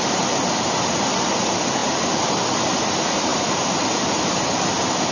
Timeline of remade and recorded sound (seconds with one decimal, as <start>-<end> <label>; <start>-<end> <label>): 0.0-5.1 recorded